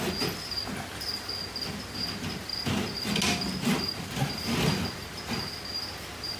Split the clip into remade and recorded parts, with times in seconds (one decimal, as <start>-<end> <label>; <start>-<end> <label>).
0.0-6.4 recorded